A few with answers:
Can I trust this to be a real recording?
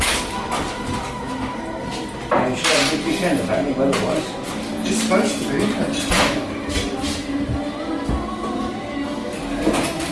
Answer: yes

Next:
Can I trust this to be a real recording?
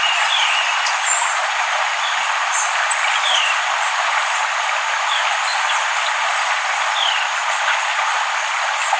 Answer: yes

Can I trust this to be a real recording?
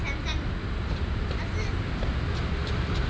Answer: yes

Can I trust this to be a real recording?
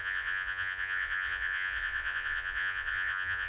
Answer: no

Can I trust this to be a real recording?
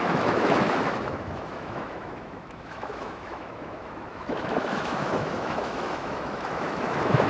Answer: no